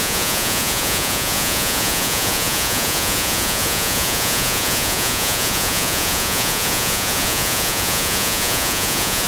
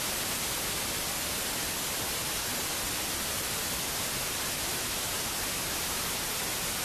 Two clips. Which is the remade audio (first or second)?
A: first